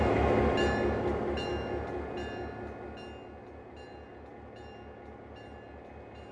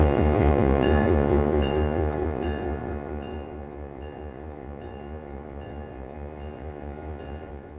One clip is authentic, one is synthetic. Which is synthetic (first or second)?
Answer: second